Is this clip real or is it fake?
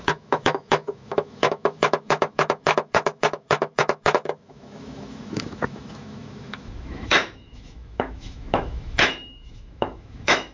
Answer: fake